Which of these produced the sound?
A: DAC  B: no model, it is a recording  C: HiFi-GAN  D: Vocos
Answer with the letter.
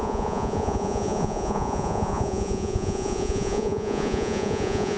D